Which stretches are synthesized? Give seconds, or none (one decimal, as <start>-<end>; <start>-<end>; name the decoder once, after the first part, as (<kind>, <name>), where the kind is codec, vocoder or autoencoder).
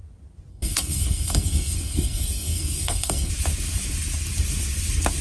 0.5-3.3 (codec, SNAC)